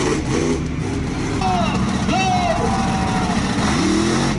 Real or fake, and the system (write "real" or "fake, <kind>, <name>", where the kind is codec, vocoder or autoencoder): real